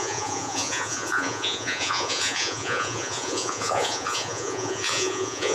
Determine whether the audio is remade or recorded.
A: remade